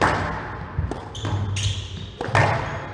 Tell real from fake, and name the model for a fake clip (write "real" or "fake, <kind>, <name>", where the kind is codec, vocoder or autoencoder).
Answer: real